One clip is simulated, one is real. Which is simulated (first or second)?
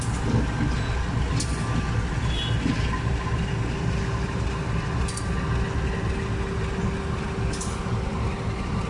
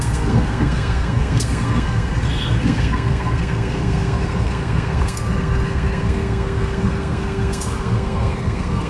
second